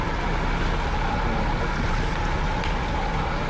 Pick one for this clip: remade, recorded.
recorded